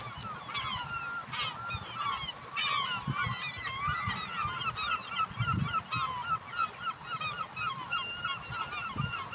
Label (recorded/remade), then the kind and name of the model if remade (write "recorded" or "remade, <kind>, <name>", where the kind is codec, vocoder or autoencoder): recorded